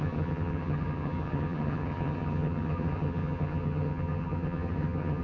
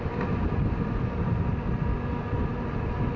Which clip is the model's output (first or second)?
first